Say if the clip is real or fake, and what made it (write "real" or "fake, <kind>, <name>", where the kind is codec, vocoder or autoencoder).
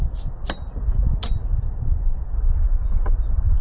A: real